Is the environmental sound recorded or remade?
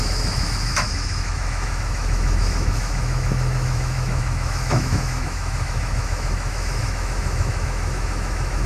remade